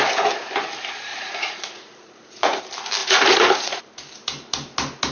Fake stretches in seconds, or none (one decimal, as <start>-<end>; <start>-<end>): 1.1-2.6; 3.0-3.8